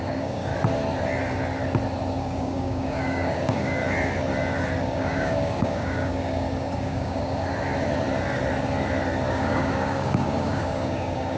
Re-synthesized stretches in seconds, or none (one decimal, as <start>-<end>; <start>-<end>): 0.0-0.5; 2.1-3.8; 4.8-7.5; 9.3-11.4